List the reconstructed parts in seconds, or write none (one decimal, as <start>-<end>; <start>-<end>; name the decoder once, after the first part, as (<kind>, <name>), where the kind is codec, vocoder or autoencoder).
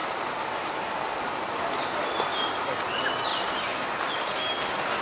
none